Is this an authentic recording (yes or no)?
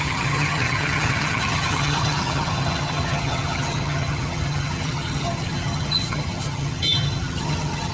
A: no